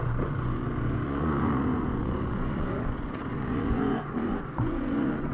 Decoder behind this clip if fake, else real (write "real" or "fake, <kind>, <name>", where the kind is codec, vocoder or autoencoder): fake, vocoder, Vocos